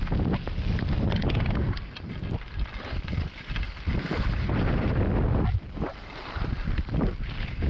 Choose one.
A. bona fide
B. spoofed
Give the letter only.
A